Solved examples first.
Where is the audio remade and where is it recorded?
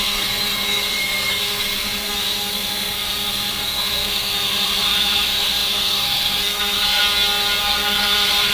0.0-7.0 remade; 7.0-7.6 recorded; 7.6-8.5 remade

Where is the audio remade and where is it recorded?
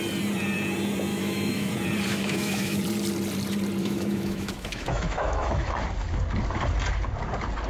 0.0-1.1 recorded; 1.1-1.7 remade; 1.7-2.1 recorded; 2.1-2.8 remade; 2.8-3.8 recorded; 3.8-5.8 remade; 5.8-7.7 recorded